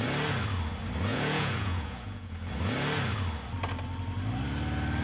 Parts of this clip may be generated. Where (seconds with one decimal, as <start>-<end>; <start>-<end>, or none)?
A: 1.1-2.5